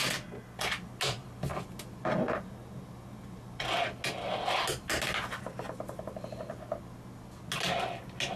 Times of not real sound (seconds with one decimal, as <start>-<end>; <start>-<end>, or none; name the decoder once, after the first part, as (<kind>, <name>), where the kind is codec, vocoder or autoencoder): none